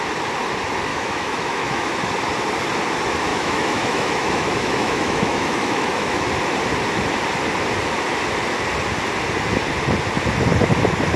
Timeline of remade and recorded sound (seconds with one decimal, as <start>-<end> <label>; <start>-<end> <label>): 0.0-0.9 recorded; 0.9-2.1 remade; 2.1-3.3 recorded; 3.3-6.3 remade; 6.3-11.2 recorded